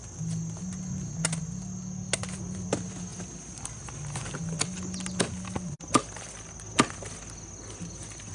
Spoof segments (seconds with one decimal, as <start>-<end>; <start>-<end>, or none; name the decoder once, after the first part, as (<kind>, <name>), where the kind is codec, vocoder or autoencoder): none